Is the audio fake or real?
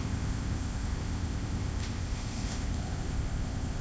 fake